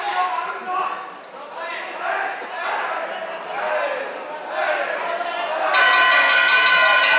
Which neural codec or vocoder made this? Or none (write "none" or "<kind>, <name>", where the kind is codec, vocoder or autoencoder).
none